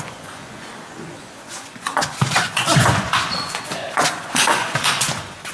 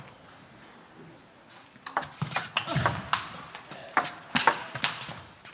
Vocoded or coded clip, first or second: first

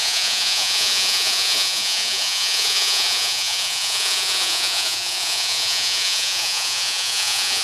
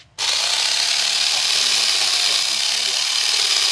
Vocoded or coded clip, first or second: first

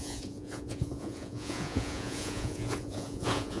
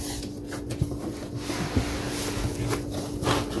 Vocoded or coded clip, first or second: first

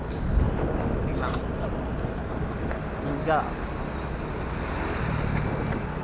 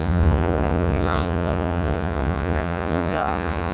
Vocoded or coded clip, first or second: second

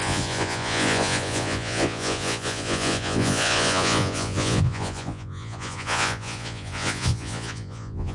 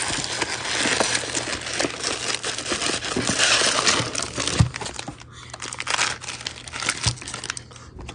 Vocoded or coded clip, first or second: first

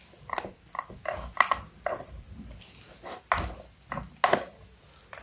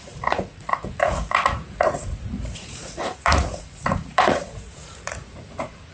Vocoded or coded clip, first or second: second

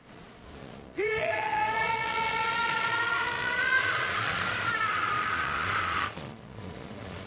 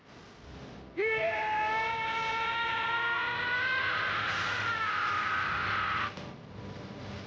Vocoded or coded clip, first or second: first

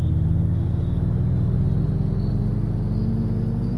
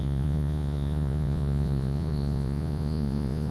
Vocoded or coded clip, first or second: second